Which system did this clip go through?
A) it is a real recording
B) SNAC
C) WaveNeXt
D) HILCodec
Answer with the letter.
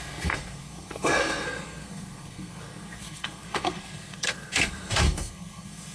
B